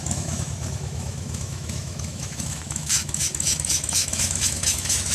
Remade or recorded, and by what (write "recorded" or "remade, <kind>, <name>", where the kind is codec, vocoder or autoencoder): remade, autoencoder, DAC-VAE